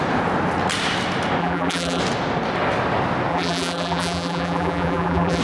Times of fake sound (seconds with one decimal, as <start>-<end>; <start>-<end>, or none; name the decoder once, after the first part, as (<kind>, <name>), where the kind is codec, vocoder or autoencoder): 1.4-2.0 (vocoder, BigVGAN v2); 3.3-5.4